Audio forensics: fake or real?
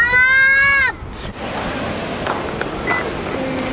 real